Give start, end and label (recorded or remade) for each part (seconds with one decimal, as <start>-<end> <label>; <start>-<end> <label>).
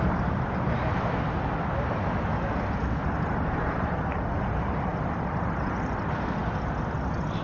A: 0.0-7.4 recorded